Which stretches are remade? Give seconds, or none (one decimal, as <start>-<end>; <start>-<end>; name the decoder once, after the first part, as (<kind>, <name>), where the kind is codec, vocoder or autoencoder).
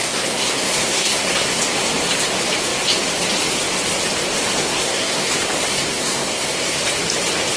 0.0-1.6 (codec, SNAC); 4.6-5.3; 5.7-6.8